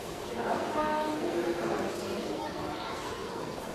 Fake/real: fake